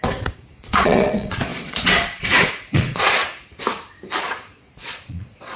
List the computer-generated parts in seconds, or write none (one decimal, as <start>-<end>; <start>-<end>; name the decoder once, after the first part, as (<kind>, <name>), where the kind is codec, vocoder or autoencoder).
0.0-3.2 (vocoder, Vocos); 4.2-5.6